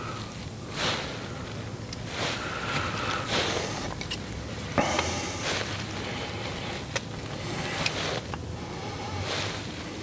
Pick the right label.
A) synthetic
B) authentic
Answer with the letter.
B